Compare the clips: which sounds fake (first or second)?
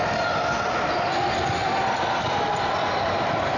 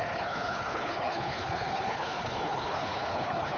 second